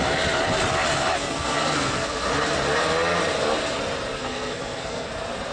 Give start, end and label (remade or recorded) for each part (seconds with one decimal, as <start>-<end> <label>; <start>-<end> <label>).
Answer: 0.0-1.1 recorded; 1.1-2.3 remade; 2.3-4.2 recorded; 4.2-5.1 remade; 5.1-5.5 recorded